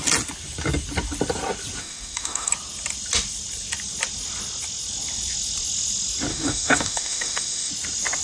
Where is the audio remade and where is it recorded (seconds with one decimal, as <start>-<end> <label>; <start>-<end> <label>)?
0.0-1.8 recorded; 1.8-2.5 remade; 2.5-6.3 recorded; 6.3-7.7 remade; 7.7-8.2 recorded